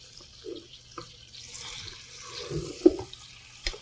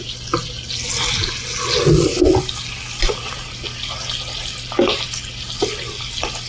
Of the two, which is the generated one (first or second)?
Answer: first